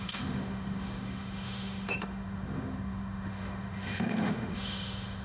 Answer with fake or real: fake